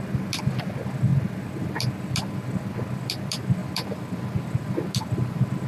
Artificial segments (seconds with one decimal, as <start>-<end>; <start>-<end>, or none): none